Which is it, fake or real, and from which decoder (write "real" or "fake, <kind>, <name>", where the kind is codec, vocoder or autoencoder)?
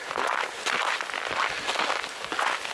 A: real